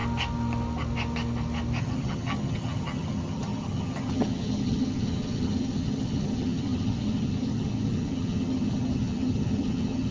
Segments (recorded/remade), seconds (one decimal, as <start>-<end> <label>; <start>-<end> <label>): 0.0-1.8 recorded; 1.8-10.1 remade